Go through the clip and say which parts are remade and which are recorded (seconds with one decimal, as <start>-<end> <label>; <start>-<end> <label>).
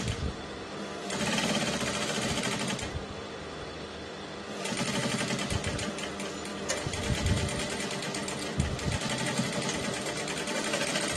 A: 0.0-11.2 recorded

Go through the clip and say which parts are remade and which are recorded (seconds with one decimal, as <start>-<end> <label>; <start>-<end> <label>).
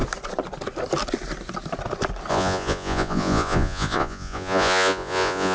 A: 0.0-2.3 recorded; 2.3-5.5 remade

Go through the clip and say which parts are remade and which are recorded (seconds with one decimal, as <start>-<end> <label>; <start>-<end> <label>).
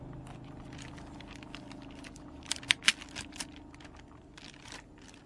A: 0.0-5.3 recorded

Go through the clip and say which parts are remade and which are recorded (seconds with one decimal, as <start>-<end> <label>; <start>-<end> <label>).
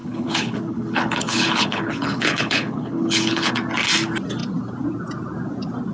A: 0.0-3.5 remade; 3.5-5.9 recorded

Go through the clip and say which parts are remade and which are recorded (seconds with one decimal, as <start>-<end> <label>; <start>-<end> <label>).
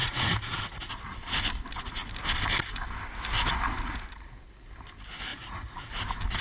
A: 0.0-0.9 remade; 0.9-5.3 recorded; 5.3-5.9 remade; 5.9-6.4 recorded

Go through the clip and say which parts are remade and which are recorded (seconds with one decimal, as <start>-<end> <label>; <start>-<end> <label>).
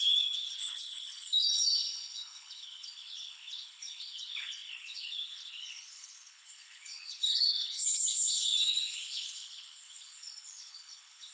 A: 0.0-11.3 remade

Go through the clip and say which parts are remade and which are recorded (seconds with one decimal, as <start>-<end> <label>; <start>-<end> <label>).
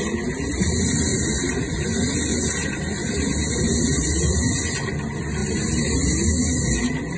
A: 0.0-1.1 recorded; 1.1-1.8 remade; 1.8-2.3 recorded; 2.3-4.5 remade; 4.5-5.4 recorded; 5.4-5.9 remade; 5.9-7.2 recorded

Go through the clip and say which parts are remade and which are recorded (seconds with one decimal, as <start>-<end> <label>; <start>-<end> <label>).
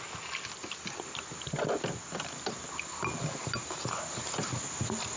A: 0.0-5.2 recorded